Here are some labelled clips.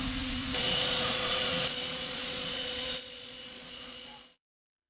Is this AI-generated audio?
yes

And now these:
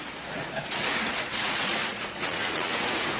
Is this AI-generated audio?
yes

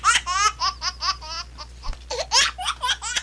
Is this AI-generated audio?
no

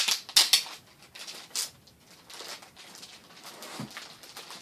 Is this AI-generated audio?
no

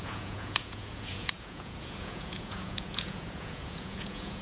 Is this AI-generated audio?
yes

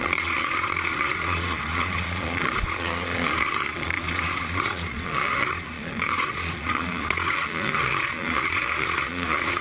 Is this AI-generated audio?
yes